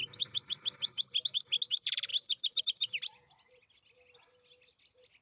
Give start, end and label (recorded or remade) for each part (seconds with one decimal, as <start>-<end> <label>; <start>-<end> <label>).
0.0-5.2 recorded